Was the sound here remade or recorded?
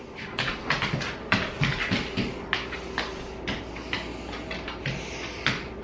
recorded